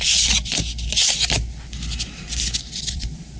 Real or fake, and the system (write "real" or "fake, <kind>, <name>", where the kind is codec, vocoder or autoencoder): fake, vocoder, BigVGAN v2